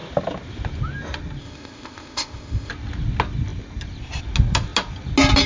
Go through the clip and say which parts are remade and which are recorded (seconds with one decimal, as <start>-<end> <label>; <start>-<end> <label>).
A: 0.0-1.4 recorded; 1.4-2.7 remade; 2.7-5.5 recorded